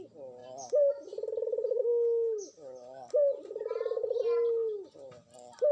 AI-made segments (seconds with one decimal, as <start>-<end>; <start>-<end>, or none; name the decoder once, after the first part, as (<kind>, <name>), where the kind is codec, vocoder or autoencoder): none